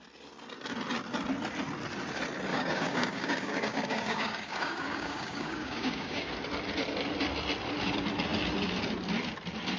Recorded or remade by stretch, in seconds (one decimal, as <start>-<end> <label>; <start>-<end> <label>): 0.0-2.5 recorded; 2.5-6.3 remade; 6.3-9.8 recorded

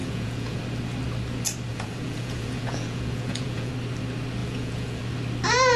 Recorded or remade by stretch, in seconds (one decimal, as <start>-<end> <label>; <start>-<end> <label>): 0.0-0.6 remade; 0.6-1.7 recorded; 1.7-3.7 remade; 3.7-4.4 recorded; 4.4-5.0 remade; 5.0-5.8 recorded